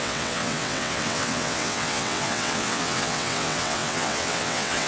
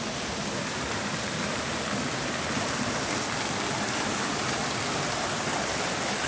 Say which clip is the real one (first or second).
second